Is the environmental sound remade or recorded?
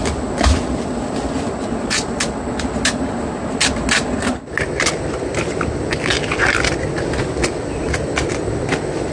recorded